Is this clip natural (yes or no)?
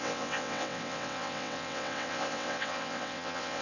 no